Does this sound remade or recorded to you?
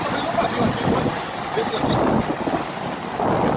recorded